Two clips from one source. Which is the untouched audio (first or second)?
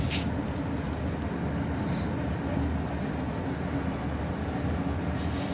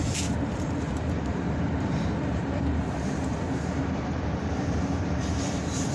first